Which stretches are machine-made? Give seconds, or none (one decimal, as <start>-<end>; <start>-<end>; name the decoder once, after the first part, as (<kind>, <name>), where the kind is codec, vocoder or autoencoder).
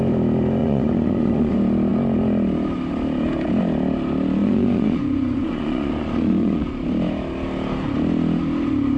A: 0.6-1.5 (vocoder, Vocos); 4.4-6.7